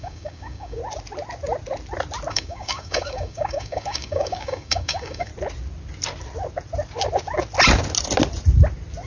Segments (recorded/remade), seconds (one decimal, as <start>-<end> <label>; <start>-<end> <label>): 0.0-0.8 remade; 0.8-2.3 recorded; 2.3-5.3 remade; 5.3-9.1 recorded